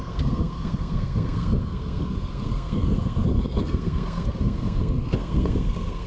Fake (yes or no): yes